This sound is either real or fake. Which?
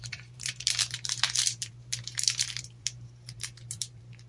fake